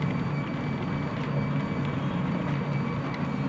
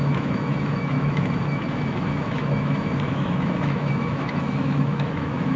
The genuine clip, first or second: first